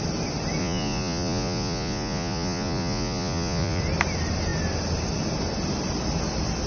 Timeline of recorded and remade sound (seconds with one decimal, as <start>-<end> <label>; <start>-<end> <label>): 0.0-0.6 recorded; 0.6-3.8 remade; 3.8-6.7 recorded